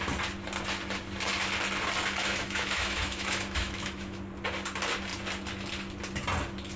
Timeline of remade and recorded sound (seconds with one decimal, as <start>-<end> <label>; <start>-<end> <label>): 0.0-2.2 recorded; 2.2-4.2 remade; 4.2-6.8 recorded